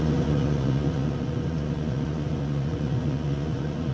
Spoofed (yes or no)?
yes